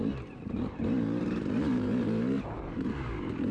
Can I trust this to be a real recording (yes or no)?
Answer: no